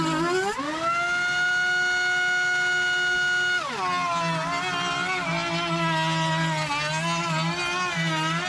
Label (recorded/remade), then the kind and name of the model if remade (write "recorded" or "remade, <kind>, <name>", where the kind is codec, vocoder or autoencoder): recorded